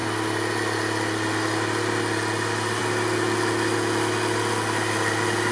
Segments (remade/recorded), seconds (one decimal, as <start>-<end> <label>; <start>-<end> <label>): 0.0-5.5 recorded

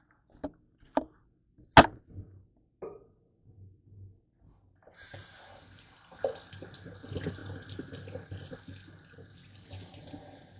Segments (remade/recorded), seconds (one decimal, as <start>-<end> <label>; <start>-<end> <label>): 0.0-10.6 recorded

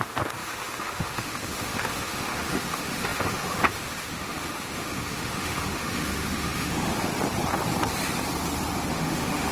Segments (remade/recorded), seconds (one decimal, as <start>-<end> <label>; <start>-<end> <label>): 0.0-7.1 remade; 7.1-8.9 recorded; 8.9-9.5 remade

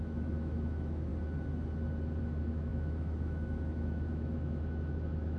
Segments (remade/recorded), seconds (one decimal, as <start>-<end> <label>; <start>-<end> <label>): 0.0-1.1 remade; 1.1-2.2 recorded; 2.2-5.4 remade